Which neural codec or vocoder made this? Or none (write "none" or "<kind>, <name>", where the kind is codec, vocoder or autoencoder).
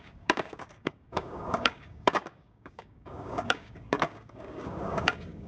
codec, DAC